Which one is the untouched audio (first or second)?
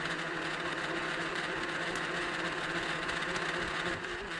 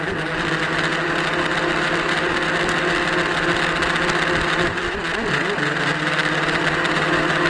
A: second